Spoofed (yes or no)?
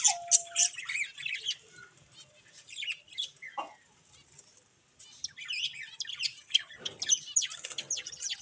no